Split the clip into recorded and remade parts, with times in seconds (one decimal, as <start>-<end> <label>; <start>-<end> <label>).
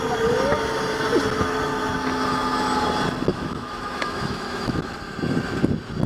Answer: 0.0-3.3 recorded; 3.3-4.9 remade; 4.9-6.1 recorded